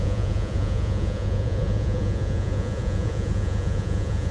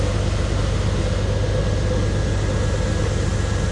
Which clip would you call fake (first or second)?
first